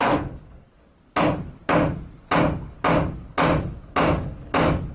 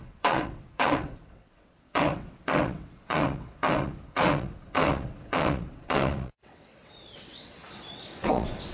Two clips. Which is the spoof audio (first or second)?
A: second